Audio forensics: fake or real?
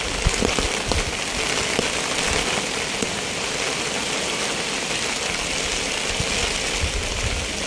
real